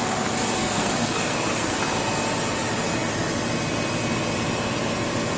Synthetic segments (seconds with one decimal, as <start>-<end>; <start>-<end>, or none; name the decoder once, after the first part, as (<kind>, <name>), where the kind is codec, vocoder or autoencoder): 0.6-1.8 (codec, SNAC)